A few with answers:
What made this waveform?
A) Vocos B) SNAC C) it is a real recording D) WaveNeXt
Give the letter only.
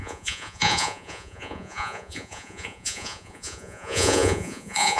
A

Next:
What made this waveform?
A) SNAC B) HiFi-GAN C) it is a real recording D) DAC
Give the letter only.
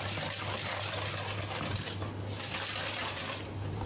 C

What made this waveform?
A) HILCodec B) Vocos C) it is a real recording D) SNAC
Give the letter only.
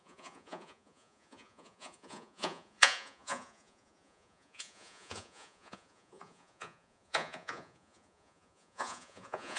B